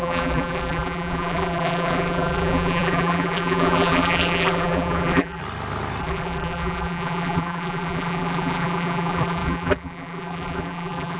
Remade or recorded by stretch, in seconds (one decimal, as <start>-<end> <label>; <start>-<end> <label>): 0.0-5.4 remade; 5.4-6.0 recorded; 6.0-11.2 remade